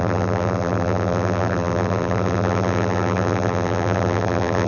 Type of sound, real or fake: fake